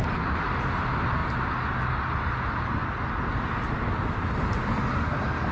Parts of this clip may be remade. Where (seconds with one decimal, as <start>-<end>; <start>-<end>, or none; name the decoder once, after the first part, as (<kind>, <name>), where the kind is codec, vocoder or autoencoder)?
none

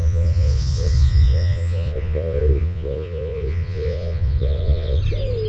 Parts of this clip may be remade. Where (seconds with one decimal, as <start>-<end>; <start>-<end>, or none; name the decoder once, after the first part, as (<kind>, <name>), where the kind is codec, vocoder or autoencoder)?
0.0-5.0 (vocoder, Vocos)

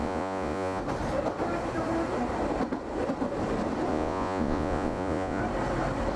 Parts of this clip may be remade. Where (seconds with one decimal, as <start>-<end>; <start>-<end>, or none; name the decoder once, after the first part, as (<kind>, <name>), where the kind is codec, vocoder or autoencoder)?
0.0-0.8 (vocoder, Vocos); 3.9-5.4

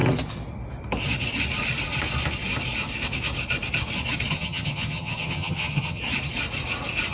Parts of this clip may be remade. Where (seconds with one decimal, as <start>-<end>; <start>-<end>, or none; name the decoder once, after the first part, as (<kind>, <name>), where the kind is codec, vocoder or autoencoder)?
4.3-6.0 (vocoder, HiFi-GAN)